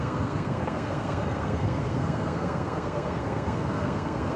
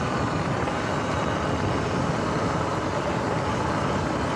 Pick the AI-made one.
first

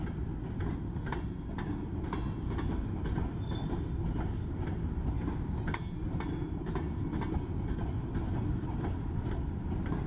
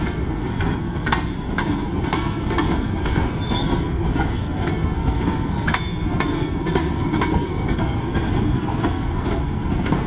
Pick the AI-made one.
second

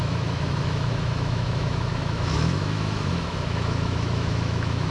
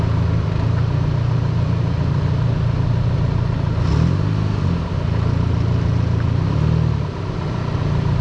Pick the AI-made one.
first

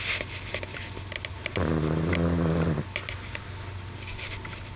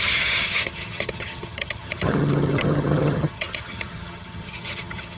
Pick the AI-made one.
second